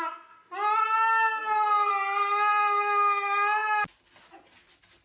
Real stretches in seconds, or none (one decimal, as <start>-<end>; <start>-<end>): 0.0-5.0